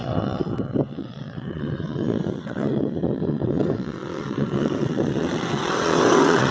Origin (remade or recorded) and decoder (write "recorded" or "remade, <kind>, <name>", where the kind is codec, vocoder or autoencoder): remade, vocoder, WaveNeXt